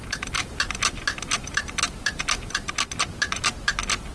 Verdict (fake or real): real